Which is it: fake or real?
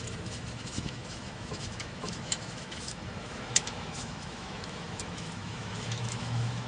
fake